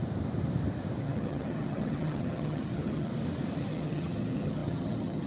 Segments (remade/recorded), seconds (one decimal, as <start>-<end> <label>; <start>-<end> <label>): 0.0-1.0 recorded; 1.0-3.1 remade; 3.1-3.6 recorded; 3.6-5.3 remade